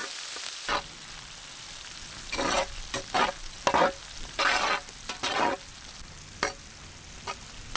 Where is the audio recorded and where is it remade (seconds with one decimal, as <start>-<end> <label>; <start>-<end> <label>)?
0.0-7.8 recorded